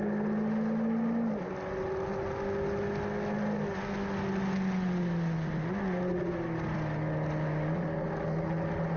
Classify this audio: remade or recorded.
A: recorded